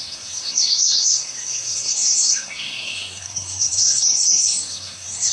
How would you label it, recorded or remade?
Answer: remade